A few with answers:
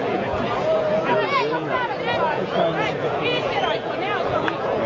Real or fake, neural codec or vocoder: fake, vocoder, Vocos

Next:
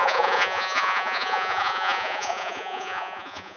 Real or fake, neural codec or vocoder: fake, vocoder, Vocos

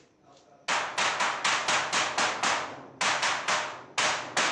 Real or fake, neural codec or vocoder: real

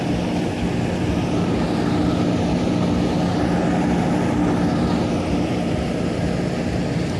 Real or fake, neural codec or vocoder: real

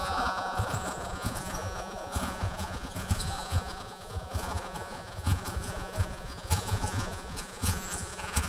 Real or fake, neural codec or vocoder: fake, vocoder, Vocos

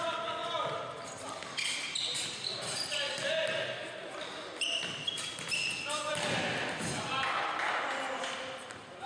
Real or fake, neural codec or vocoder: real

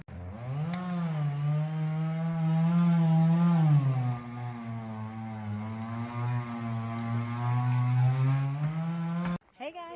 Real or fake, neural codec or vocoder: real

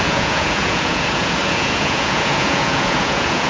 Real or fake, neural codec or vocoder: fake, vocoder, Vocos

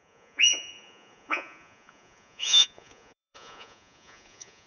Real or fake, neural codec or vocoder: fake, vocoder, Vocos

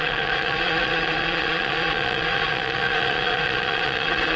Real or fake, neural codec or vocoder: fake, vocoder, Vocos